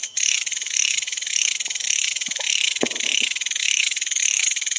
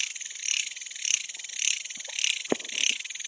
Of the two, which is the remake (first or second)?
first